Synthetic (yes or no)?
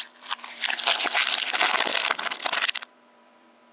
yes